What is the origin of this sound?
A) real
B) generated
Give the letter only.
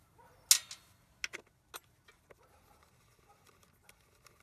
A